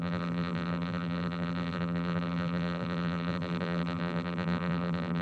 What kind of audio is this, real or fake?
fake